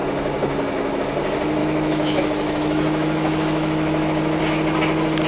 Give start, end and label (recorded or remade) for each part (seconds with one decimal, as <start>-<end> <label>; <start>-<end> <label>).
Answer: 0.0-1.6 recorded; 1.6-4.4 remade; 4.4-5.3 recorded